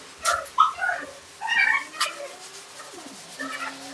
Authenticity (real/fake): real